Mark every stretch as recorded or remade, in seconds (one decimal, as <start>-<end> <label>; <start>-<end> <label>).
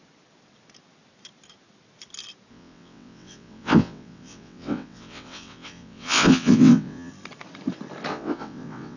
0.0-2.5 recorded; 2.5-7.1 remade; 7.1-8.1 recorded; 8.1-9.0 remade